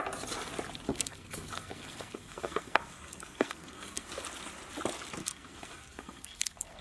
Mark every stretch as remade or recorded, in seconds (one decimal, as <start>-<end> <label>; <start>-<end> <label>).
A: 0.0-0.9 recorded; 0.9-4.1 remade; 4.1-5.2 recorded; 5.2-6.8 remade